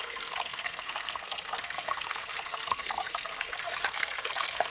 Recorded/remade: remade